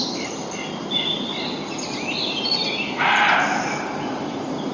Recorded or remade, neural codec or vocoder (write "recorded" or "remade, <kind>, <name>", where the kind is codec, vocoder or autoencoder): recorded